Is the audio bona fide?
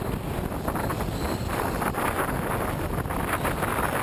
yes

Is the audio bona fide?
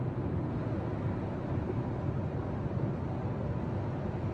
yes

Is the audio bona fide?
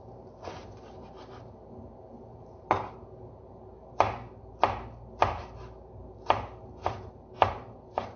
yes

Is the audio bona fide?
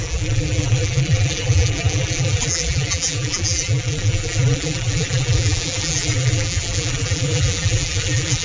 no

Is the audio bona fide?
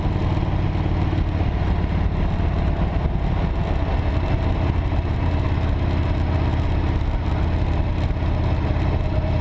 yes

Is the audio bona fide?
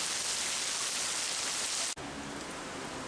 yes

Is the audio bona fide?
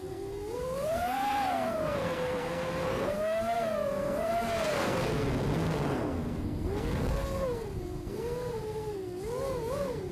no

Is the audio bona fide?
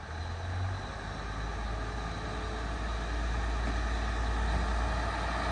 yes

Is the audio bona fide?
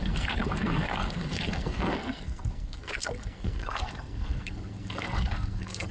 no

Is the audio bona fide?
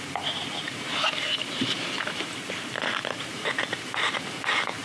no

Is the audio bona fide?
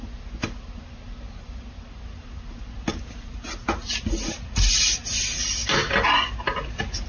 yes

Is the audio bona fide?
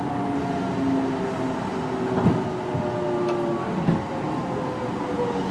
yes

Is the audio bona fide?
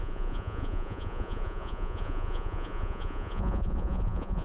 no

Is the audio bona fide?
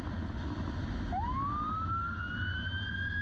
yes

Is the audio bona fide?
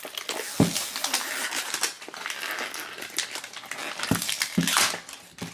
yes